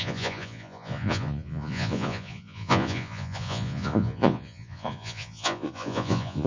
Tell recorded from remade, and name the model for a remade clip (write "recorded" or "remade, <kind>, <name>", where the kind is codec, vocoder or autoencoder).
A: remade, vocoder, Vocos